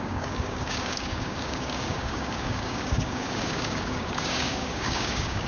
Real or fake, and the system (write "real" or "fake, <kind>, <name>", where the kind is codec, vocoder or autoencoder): fake, codec, DAC